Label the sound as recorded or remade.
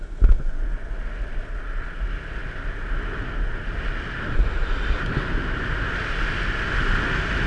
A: recorded